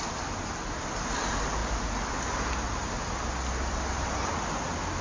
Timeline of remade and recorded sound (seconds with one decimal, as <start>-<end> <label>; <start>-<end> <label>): 0.0-5.0 recorded